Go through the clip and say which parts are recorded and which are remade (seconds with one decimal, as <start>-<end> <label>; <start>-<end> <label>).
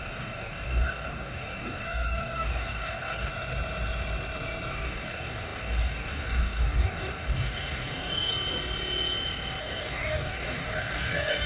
0.0-3.3 remade; 3.3-4.7 recorded; 4.7-8.3 remade; 8.3-9.6 recorded; 9.6-11.5 remade